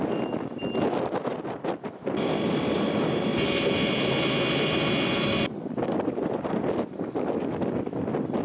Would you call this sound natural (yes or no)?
yes